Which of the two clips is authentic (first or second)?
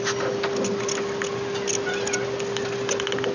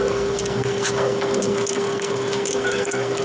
first